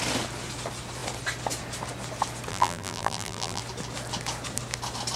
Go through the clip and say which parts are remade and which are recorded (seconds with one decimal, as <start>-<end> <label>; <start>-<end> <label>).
0.0-2.5 recorded; 2.5-3.6 remade; 3.6-5.2 recorded